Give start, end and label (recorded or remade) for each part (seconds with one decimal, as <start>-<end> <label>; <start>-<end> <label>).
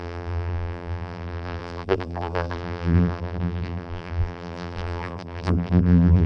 0.0-6.3 remade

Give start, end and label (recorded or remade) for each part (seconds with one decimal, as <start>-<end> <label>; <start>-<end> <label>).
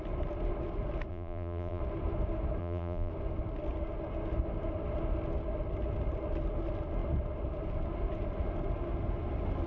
0.0-1.1 recorded; 1.1-1.8 remade; 1.8-2.6 recorded; 2.6-3.1 remade; 3.1-9.7 recorded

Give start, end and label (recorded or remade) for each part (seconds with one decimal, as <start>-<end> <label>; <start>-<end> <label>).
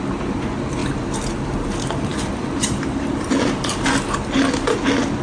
0.0-0.8 recorded; 0.8-3.9 remade; 3.9-5.2 recorded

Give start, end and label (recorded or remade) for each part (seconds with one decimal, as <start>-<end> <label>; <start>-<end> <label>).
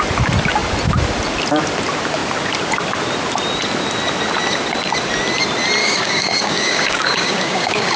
0.0-5.8 recorded; 5.8-8.0 remade